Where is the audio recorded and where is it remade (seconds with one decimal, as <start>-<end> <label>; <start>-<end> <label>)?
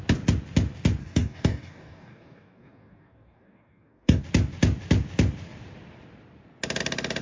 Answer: 0.0-1.0 recorded; 1.0-4.2 remade; 4.2-7.2 recorded